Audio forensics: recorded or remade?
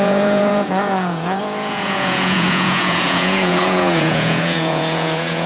remade